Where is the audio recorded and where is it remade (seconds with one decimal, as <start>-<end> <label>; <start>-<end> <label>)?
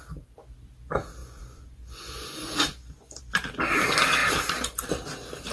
0.0-1.2 recorded; 1.2-3.2 remade; 3.2-5.5 recorded